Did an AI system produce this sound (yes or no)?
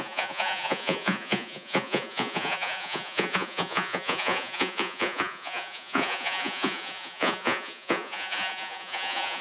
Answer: yes